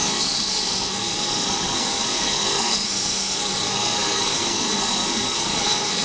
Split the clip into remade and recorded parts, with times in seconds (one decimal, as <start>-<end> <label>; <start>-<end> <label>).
0.0-6.0 remade